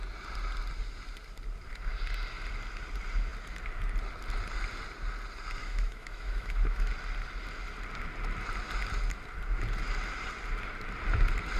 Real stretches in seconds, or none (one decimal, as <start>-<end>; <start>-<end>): 0.0-5.6; 6.9-11.6